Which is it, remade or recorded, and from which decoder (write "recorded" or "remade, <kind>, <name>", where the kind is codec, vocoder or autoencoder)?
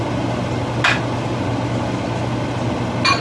recorded